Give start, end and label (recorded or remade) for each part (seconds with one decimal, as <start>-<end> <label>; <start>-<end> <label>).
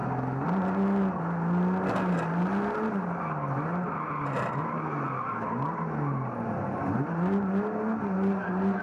0.0-8.8 recorded